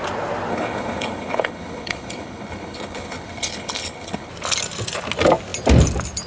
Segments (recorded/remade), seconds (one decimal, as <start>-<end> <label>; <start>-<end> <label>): 0.0-0.5 recorded; 0.5-4.3 remade; 4.3-6.3 recorded